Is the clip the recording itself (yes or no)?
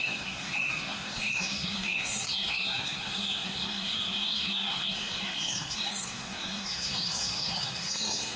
no